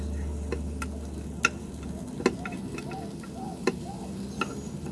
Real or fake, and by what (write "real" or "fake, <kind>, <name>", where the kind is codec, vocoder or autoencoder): real